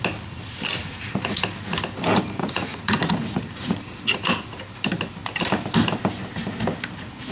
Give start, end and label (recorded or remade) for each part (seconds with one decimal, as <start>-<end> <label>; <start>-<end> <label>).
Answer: 0.0-0.8 recorded; 0.8-1.4 remade; 1.4-2.4 recorded; 2.4-4.6 remade; 4.6-7.3 recorded